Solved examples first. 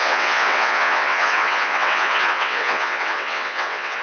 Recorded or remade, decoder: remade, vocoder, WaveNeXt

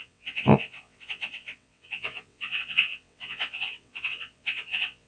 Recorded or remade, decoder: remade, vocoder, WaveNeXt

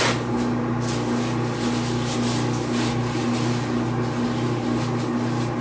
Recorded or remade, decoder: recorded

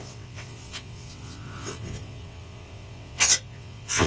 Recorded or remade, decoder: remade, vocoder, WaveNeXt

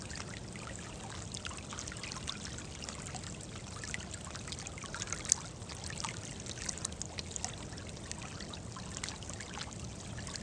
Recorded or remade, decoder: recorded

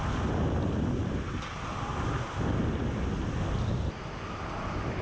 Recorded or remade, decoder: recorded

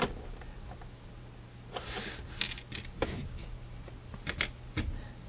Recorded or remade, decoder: recorded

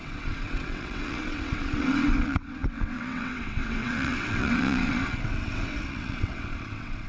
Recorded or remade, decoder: remade, vocoder, WaveNeXt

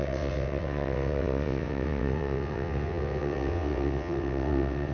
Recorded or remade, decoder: remade, vocoder, WaveNeXt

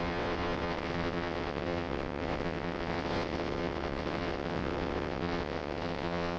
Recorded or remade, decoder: remade, vocoder, WaveNeXt